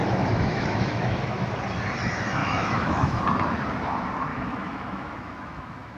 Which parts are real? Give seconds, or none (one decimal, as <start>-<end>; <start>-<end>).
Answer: 1.5-2.4; 3.2-4.3